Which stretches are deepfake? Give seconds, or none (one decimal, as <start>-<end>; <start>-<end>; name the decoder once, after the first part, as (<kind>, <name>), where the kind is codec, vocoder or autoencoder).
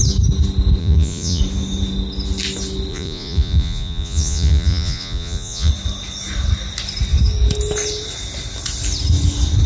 0.8-1.4 (vocoder, Vocos); 2.9-5.7